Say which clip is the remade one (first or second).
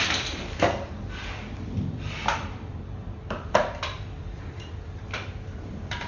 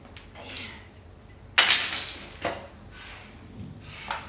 first